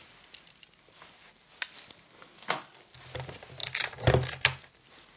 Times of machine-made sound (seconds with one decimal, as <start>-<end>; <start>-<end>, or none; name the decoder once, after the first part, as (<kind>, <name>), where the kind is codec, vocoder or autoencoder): none